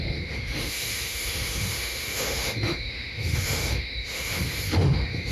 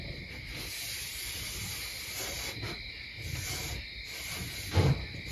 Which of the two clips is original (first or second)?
second